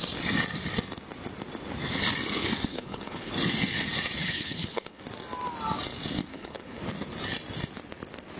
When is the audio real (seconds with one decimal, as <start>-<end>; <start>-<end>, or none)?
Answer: 0.0-2.7; 3.3-4.2; 5.0-6.3; 6.8-8.4